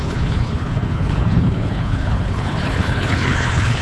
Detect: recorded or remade remade